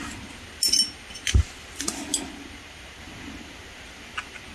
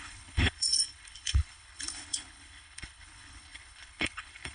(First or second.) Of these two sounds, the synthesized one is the second